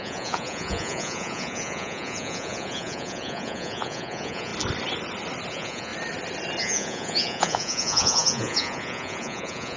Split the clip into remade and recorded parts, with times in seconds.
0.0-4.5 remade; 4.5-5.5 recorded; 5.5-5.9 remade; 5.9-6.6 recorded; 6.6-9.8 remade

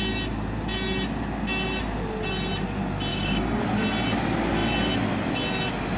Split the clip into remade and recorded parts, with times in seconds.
0.0-3.1 recorded; 3.1-3.6 remade; 3.6-6.0 recorded

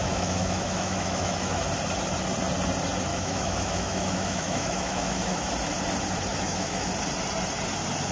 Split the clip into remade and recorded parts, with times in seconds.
0.0-1.6 remade; 1.6-3.1 recorded; 3.1-5.5 remade; 5.5-6.3 recorded; 6.3-6.9 remade; 6.9-8.1 recorded